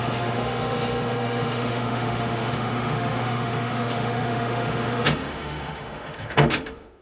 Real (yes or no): no